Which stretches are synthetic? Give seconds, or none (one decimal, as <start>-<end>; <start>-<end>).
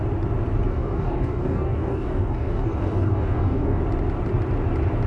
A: 0.7-3.8